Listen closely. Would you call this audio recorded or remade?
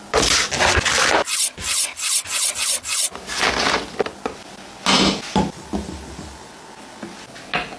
recorded